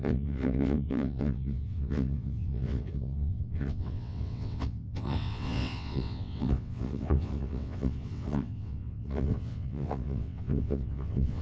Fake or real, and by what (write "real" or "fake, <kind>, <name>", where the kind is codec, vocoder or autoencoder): fake, vocoder, WaveNeXt